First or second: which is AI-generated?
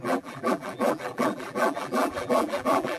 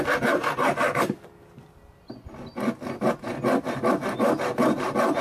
first